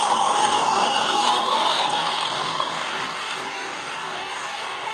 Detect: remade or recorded remade